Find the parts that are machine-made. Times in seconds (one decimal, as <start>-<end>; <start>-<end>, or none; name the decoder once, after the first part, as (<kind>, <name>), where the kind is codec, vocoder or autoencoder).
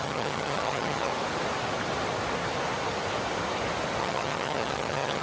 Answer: 0.0-1.1 (vocoder, HiFi-GAN); 4.0-5.2